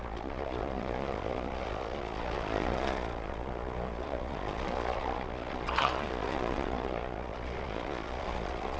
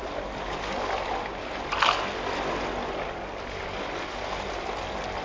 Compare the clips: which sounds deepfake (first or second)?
first